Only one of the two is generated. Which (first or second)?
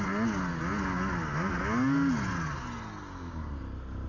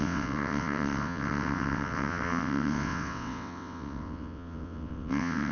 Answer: second